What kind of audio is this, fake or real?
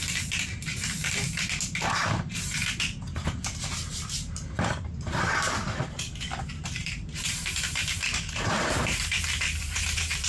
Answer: fake